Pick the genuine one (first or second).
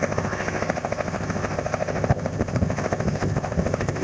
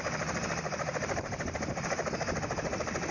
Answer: second